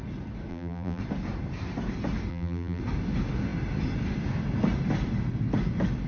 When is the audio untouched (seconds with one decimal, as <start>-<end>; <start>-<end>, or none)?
0.0-0.5; 1.0-2.3; 2.8-6.1